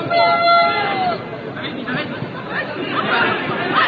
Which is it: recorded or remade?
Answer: recorded